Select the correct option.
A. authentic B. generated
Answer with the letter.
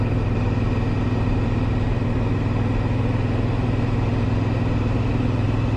A